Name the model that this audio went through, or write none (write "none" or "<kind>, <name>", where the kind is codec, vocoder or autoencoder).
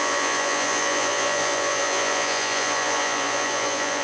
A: vocoder, Vocos